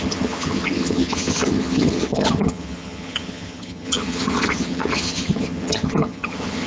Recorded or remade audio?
remade